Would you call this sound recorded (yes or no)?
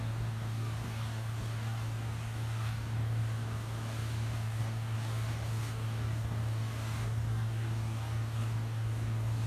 no